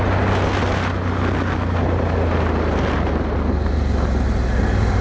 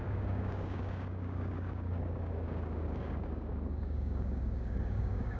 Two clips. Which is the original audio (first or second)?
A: first